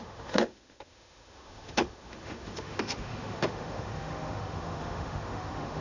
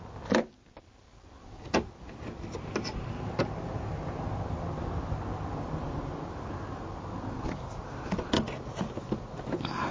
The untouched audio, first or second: second